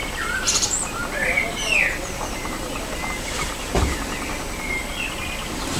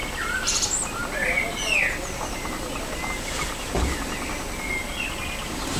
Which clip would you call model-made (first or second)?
first